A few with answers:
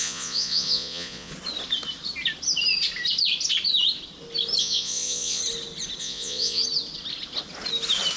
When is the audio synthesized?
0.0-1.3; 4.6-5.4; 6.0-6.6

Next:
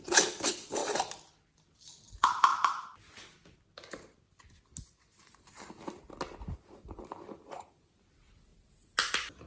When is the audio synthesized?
none

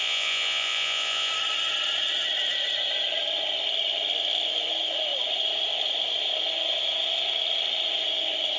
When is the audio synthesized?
0.0-1.3